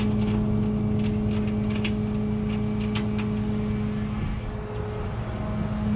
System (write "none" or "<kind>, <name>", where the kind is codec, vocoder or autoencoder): none